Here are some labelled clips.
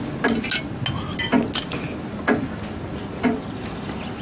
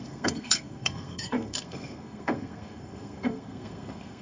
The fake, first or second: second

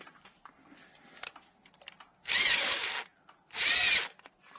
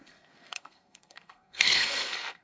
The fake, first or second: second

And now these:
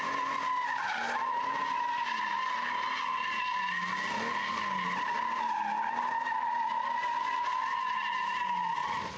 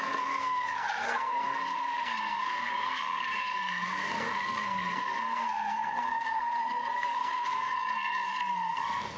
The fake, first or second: second